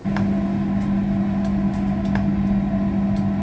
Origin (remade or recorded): recorded